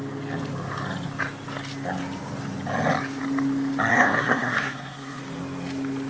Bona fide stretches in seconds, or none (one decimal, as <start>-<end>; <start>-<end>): 0.0-3.9; 5.2-6.1